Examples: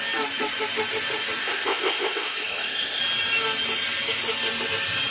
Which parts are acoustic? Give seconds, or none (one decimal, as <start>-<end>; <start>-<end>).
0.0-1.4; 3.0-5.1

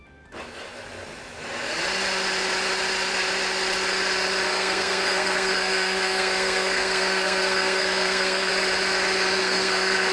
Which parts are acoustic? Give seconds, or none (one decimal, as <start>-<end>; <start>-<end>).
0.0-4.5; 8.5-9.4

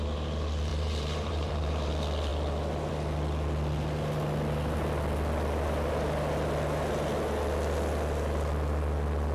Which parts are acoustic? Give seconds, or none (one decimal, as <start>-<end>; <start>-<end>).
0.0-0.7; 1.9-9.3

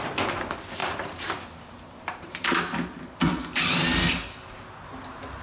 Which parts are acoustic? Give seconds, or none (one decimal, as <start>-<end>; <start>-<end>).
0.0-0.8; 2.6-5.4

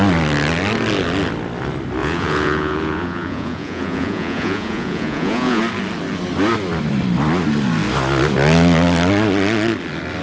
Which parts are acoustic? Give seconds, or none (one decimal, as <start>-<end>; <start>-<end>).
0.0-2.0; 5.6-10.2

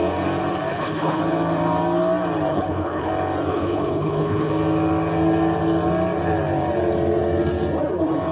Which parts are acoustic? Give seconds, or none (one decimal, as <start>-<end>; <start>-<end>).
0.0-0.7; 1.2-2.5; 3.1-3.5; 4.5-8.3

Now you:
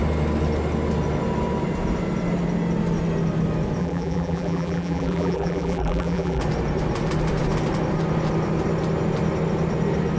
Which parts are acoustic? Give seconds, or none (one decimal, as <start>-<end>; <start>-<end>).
0.0-3.8; 6.4-10.2